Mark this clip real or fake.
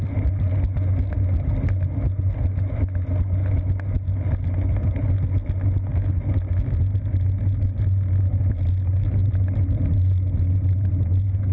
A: real